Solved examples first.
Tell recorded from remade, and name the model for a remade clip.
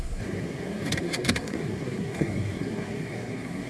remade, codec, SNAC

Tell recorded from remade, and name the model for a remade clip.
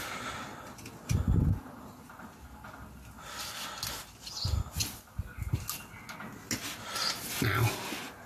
recorded